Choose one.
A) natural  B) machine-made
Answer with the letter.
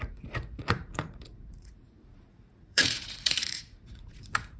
B